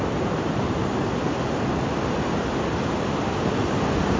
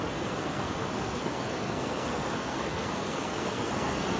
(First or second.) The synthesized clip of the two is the second